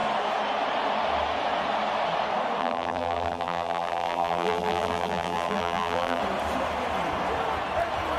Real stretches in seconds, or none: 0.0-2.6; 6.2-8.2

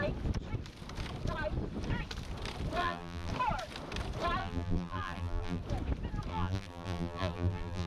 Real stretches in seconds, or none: 0.0-2.8; 3.3-4.4; 5.6-6.3

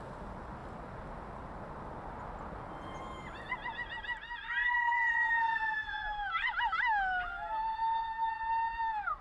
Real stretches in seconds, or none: 0.0-4.6; 5.7-9.2

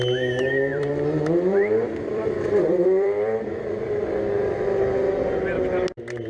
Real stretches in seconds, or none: 0.0-0.7; 3.9-6.3

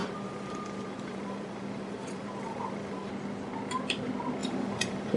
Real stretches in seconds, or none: 3.1-4.4

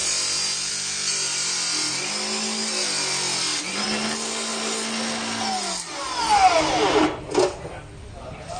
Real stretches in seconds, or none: 0.0-8.6

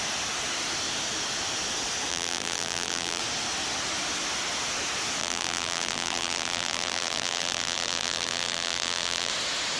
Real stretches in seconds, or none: 0.0-2.1; 3.2-5.2; 9.3-9.8

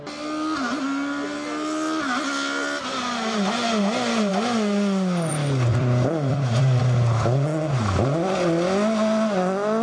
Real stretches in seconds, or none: 0.0-5.7; 6.8-9.8